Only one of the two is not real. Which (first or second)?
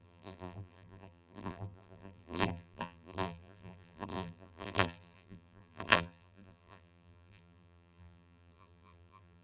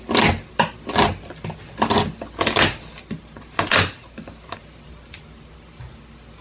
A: first